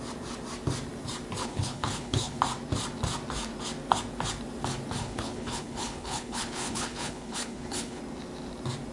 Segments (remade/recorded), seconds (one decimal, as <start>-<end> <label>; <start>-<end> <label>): 0.0-1.4 recorded; 1.4-2.4 remade; 2.4-5.0 recorded; 5.0-8.0 remade; 8.0-8.9 recorded